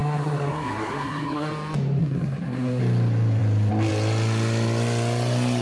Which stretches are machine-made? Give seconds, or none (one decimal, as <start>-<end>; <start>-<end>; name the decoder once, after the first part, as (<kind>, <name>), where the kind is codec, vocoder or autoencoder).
0.0-1.5 (codec, SNAC); 2.0-2.8